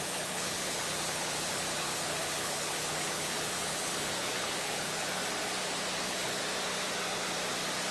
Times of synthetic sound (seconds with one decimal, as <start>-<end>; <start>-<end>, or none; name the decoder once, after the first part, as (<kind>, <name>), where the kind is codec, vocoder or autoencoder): 0.0-5.2 (codec, HILCodec); 6.0-6.4